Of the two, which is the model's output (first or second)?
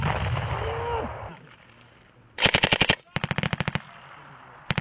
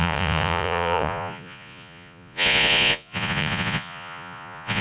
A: second